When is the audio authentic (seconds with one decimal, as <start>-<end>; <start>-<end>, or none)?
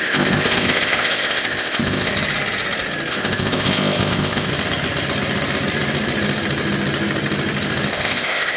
2.1-3.1; 4.5-7.9